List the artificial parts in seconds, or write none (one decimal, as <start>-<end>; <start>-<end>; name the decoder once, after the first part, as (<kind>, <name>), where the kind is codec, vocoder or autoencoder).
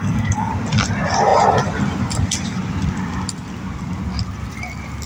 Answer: 0.0-0.5 (codec, SNAC)